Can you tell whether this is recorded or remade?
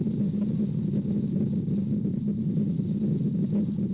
recorded